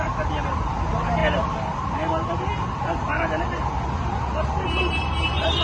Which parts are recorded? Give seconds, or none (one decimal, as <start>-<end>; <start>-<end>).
0.0-5.6

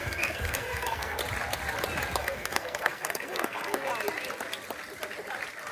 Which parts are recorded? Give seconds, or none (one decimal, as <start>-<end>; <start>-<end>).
1.2-2.2; 3.9-5.7

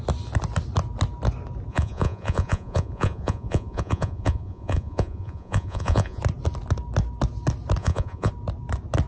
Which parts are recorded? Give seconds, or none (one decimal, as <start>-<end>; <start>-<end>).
0.0-1.7; 6.2-7.8; 8.3-9.1

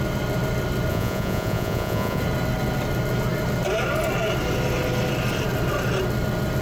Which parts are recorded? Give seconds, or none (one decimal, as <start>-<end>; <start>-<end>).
0.0-0.9; 2.2-6.6

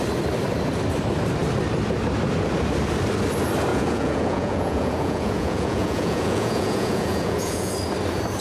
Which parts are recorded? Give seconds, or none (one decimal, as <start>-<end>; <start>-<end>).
0.0-3.7; 7.7-8.4